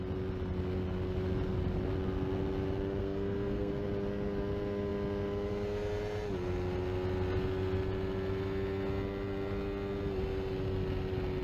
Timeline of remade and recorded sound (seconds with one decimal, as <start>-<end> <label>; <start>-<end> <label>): 0.0-3.0 recorded; 3.0-3.7 remade; 3.7-11.4 recorded